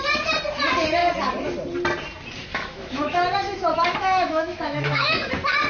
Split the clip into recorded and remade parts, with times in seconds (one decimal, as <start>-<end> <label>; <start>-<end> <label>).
0.0-2.5 recorded; 2.5-5.3 remade; 5.3-5.7 recorded